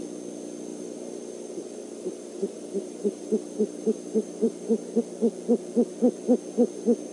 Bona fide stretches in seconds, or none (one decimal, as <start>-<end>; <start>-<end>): 0.0-0.7; 5.0-7.1